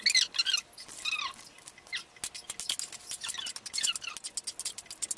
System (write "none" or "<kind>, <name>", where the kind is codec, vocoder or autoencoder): none